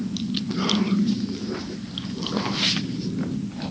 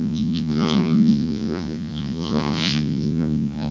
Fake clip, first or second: second